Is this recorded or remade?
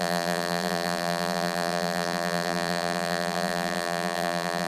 remade